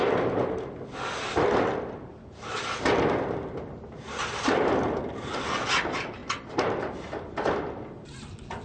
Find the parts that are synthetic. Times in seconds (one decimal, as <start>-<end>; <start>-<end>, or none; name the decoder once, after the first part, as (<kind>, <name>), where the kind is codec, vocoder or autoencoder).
none